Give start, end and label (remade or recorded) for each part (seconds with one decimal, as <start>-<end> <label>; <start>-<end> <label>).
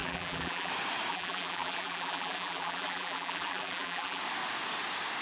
0.0-0.7 remade; 0.7-1.1 recorded; 1.1-4.2 remade; 4.2-5.2 recorded